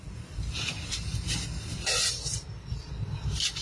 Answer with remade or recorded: recorded